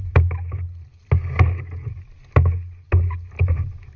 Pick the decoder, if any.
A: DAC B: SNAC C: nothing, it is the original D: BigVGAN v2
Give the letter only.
C